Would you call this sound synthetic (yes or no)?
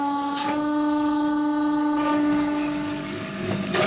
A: yes